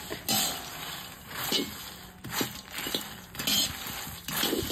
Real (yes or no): yes